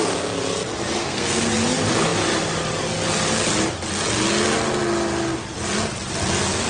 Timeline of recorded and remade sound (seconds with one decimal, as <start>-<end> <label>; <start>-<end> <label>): 0.0-1.0 recorded; 1.0-1.5 remade; 1.5-6.7 recorded